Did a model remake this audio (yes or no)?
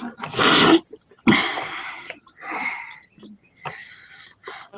no